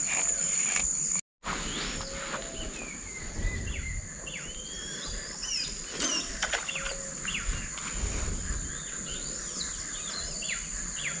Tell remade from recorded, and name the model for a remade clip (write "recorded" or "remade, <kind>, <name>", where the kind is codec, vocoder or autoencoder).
recorded